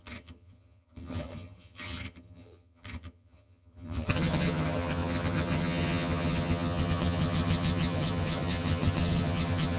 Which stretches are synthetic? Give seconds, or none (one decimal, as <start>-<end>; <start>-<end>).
0.0-9.8